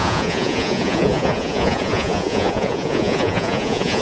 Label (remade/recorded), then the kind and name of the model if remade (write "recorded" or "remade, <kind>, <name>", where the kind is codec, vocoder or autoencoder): remade, vocoder, Vocos